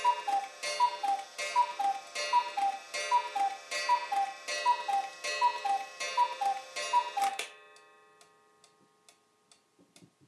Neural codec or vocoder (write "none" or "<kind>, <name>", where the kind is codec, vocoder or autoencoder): none